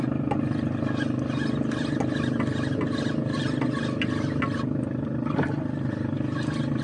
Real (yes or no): yes